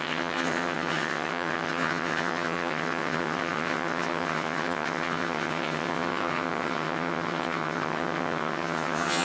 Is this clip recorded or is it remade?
remade